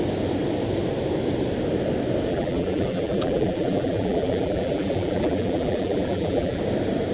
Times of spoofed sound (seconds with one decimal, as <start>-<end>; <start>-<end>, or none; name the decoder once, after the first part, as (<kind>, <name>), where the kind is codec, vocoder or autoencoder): 2.3-6.6 (vocoder, BigVGAN v2)